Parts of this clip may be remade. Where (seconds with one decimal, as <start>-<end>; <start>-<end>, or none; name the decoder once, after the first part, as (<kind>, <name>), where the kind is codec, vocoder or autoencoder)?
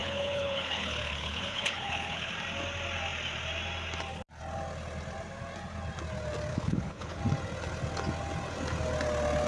0.0-2.3 (codec, HILCodec); 6.5-7.2